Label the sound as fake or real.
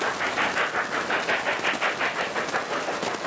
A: real